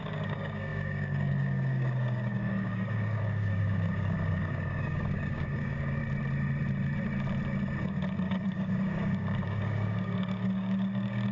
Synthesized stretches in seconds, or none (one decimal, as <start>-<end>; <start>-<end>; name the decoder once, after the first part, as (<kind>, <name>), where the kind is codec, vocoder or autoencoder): 0.0-6.0 (codec, DAC); 7.8-11.3